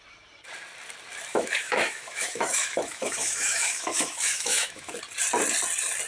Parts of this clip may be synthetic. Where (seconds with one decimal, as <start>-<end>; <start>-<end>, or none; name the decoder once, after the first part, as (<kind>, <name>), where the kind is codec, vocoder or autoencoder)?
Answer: 1.3-5.0 (autoencoder, DAC-VAE)